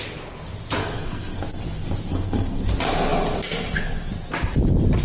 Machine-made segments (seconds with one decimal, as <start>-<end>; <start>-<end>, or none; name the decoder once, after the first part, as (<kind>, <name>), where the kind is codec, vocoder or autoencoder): 0.8-1.4 (codec, SNAC); 2.1-2.7